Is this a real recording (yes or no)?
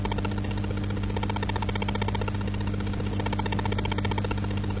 yes